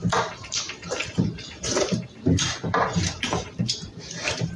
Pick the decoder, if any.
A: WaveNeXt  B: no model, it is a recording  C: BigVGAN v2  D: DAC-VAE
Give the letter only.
C